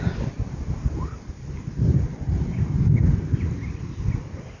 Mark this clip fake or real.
real